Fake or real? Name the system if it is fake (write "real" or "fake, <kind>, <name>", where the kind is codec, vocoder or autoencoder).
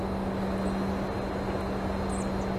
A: real